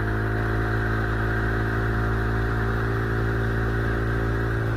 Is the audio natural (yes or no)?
yes